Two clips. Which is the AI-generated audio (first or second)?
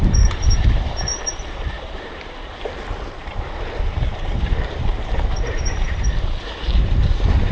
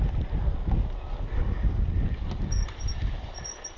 first